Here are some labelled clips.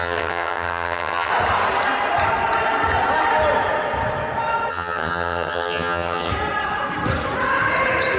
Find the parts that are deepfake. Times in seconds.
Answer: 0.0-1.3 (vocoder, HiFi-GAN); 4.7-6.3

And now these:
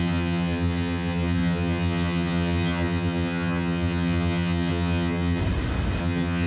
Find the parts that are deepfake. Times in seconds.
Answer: 0.0-5.4 (vocoder, HiFi-GAN); 6.0-6.5

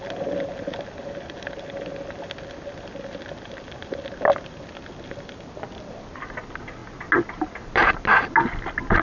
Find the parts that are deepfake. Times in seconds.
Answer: none

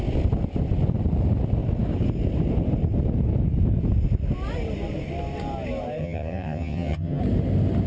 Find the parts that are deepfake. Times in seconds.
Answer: 6.0-7.2 (vocoder, HiFi-GAN)

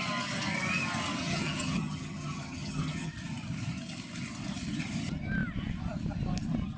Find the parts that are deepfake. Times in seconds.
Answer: 1.2-3.1 (vocoder, HiFi-GAN)

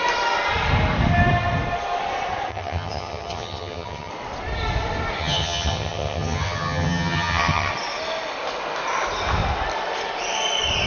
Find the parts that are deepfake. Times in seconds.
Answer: 2.5-4.1 (vocoder, HiFi-GAN); 5.2-7.7

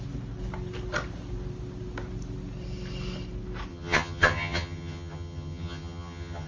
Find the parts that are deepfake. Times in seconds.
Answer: 3.7-6.5 (vocoder, HiFi-GAN)